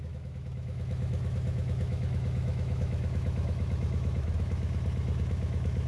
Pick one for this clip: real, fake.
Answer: fake